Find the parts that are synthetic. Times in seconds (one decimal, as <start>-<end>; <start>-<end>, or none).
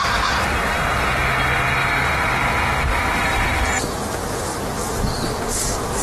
none